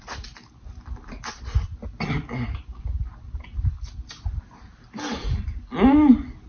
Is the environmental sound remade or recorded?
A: recorded